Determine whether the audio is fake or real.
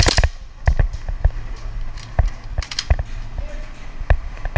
real